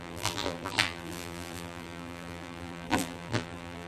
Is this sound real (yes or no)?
no